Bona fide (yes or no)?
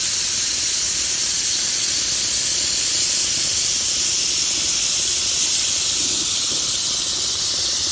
yes